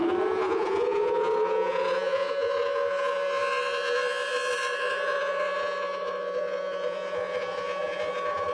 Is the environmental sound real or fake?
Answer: fake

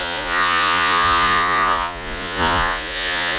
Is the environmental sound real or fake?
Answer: fake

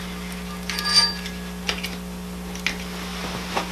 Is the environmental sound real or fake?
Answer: real